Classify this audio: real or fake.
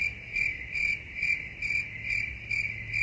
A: real